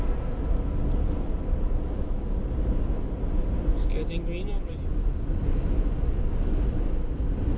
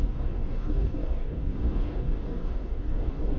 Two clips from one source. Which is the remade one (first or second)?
second